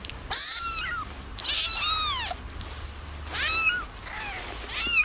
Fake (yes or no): no